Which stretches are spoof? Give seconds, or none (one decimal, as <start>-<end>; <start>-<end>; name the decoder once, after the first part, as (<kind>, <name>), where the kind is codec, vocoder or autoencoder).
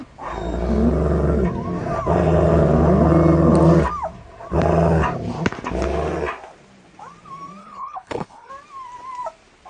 7.6-8.5 (codec, HILCodec)